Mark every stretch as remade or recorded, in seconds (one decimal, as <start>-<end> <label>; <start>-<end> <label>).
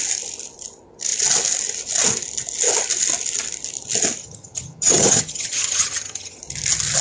0.0-4.2 recorded; 4.2-6.4 remade; 6.4-7.0 recorded